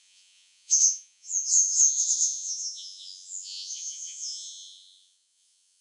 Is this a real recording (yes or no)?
no